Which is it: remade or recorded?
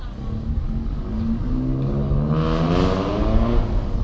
recorded